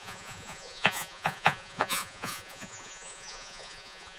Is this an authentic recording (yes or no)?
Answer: no